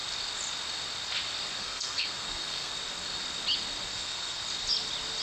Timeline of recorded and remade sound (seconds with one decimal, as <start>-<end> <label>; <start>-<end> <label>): 0.0-1.6 recorded; 1.6-2.7 remade; 2.7-3.9 recorded; 3.9-4.4 remade; 4.4-5.2 recorded